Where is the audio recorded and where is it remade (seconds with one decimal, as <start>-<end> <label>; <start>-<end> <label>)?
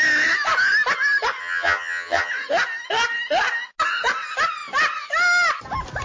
0.0-1.4 recorded; 1.4-2.3 remade; 2.3-6.0 recorded